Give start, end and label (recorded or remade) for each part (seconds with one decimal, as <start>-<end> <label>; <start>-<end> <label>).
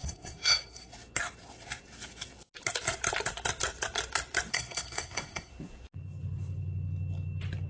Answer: 0.0-0.9 remade; 0.9-4.5 recorded; 4.5-5.5 remade; 5.5-7.7 recorded